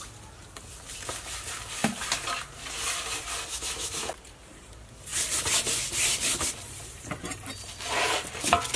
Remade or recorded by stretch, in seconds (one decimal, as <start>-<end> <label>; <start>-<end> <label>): 0.0-3.5 recorded; 3.5-4.1 remade; 4.1-8.8 recorded